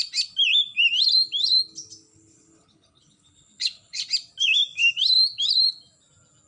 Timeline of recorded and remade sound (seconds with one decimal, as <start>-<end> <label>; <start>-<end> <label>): 0.0-2.1 recorded; 2.1-4.0 remade; 4.0-6.5 recorded